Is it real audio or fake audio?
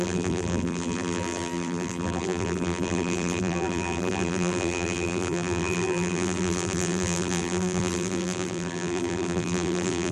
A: fake